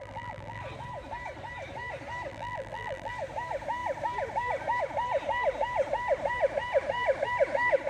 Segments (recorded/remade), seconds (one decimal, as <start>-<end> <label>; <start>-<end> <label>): 0.0-0.6 remade; 0.6-2.3 recorded; 2.3-3.1 remade; 3.1-7.9 recorded